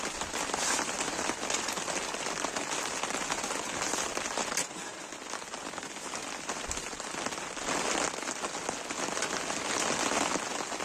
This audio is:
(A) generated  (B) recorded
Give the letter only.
B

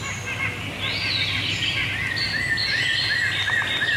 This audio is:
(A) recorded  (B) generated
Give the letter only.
A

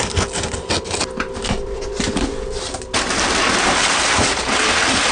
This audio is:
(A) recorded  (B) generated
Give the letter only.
A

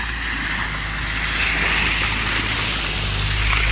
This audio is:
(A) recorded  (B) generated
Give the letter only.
A